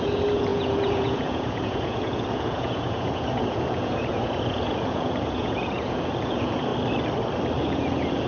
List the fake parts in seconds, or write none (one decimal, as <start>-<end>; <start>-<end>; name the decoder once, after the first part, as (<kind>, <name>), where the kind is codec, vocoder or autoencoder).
0.0-6.7 (vocoder, Vocos); 7.6-8.3